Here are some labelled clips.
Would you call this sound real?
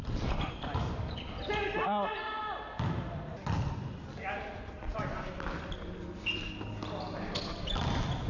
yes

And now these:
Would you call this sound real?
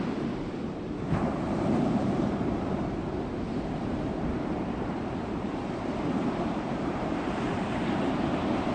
no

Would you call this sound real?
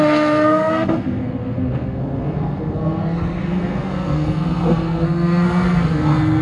no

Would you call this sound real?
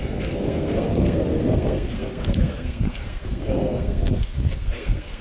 no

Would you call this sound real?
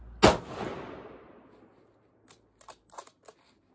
yes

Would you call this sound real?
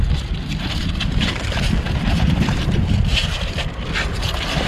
no